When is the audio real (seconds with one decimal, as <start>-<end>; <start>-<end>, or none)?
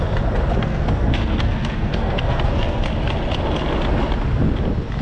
0.0-0.6; 2.8-5.0